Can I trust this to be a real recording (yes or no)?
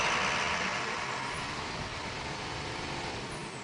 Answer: yes